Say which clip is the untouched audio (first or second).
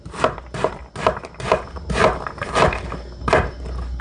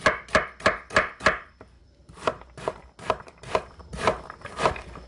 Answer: first